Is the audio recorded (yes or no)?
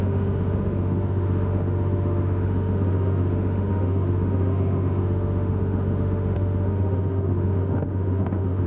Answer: no